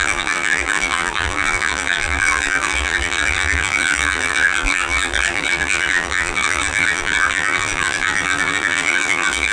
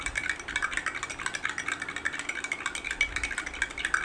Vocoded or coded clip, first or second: first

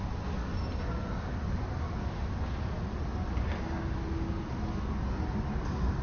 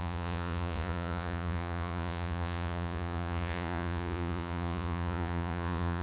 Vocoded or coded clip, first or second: second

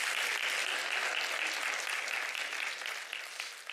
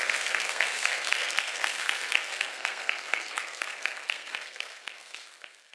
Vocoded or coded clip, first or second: second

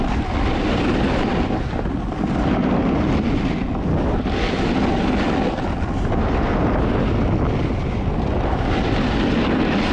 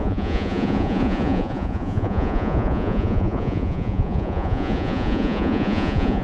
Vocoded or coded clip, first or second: second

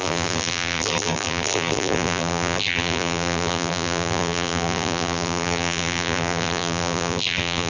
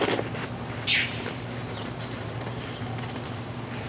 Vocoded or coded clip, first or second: first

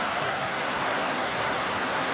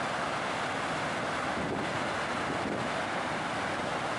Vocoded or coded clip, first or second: first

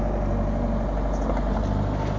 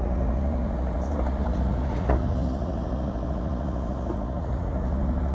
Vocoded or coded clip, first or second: second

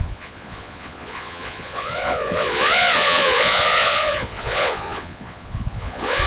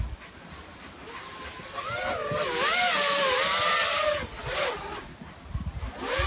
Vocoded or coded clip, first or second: first